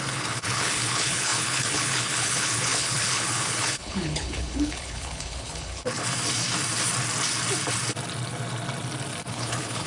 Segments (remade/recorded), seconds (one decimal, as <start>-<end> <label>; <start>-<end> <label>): 0.0-6.0 remade; 6.0-9.3 recorded; 9.3-9.9 remade